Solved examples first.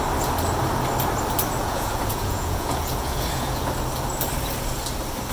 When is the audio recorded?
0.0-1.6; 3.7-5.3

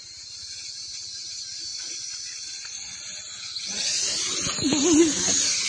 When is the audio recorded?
0.0-1.7; 3.0-5.7

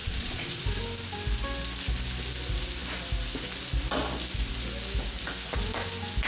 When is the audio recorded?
0.6-6.3

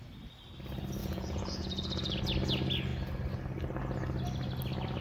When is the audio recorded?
0.0-1.0; 2.2-5.0